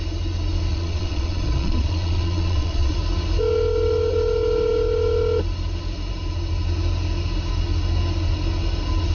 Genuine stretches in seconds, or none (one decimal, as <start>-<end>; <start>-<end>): 0.0-0.7; 2.9-9.1